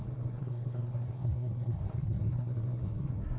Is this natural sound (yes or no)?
no